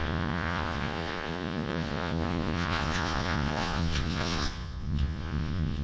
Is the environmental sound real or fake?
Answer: fake